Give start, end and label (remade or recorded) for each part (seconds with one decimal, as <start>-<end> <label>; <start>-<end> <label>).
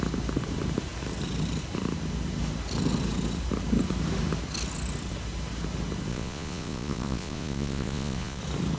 0.0-6.1 recorded; 6.1-8.4 remade; 8.4-8.8 recorded